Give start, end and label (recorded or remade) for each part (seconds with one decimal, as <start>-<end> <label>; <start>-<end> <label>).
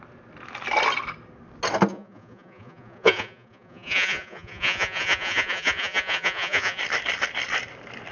0.0-1.9 recorded; 1.9-6.8 remade; 6.8-8.1 recorded